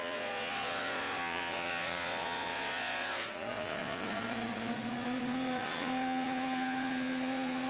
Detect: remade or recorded remade